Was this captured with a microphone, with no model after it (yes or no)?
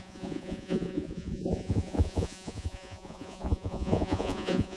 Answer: no